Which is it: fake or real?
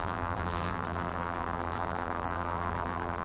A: fake